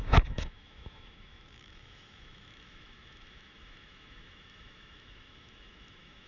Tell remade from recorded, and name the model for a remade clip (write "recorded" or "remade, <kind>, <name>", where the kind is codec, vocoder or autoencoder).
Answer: remade, autoencoder, DAC-VAE